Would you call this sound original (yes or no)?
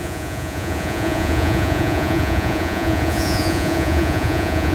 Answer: no